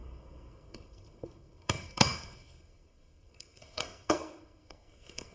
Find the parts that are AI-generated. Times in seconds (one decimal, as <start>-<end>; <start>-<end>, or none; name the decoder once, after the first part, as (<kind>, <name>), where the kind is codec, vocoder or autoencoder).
0.0-5.3 (codec, SNAC)